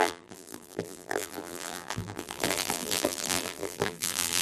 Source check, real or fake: fake